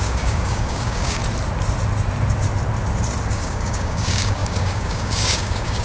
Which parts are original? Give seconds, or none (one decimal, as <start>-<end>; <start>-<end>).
1.2-3.3